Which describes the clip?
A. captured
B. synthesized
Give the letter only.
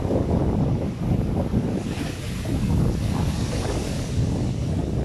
B